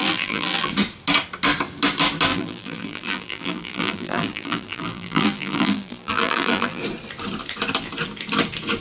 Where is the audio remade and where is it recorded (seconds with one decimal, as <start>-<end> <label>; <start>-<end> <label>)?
0.0-0.7 remade; 0.7-2.3 recorded; 2.3-6.8 remade; 6.8-8.8 recorded